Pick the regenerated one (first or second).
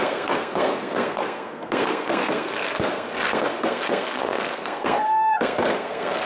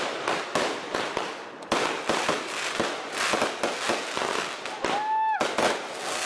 first